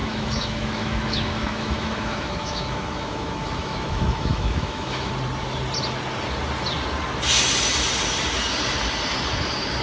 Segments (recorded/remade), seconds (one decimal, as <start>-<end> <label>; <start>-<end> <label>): 0.0-5.1 remade; 5.1-9.8 recorded